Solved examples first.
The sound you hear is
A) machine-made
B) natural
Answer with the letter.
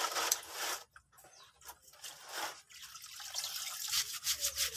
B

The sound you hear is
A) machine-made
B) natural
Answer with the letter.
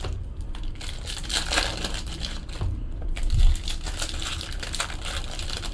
A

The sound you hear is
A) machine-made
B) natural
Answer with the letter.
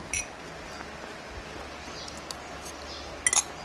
B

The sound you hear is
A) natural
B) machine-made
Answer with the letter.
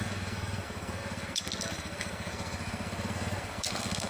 B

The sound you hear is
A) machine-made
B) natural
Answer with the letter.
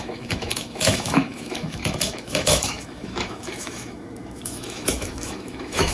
A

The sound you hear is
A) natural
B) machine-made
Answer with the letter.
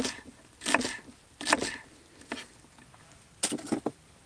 A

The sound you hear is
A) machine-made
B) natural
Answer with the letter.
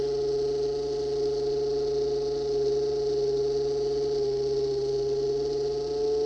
B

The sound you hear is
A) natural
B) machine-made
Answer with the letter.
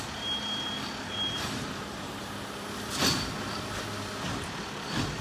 A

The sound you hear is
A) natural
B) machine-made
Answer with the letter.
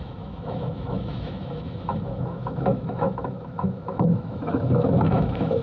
B